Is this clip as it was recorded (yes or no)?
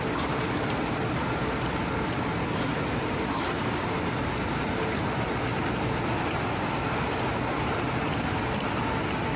yes